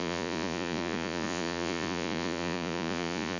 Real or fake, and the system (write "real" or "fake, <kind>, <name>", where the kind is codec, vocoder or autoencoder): fake, vocoder, Vocos